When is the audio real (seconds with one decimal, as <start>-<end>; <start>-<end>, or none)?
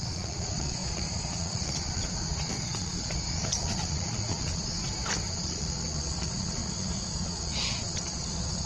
4.8-5.3